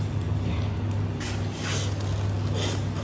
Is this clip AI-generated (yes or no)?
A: no